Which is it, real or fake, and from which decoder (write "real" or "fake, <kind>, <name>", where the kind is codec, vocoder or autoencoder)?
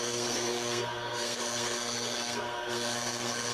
fake, codec, SNAC